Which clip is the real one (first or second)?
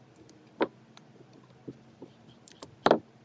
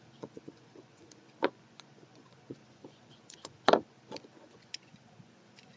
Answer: first